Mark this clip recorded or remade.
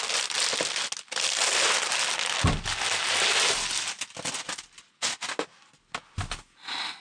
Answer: recorded